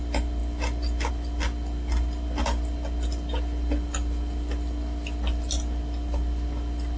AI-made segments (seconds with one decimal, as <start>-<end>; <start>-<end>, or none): none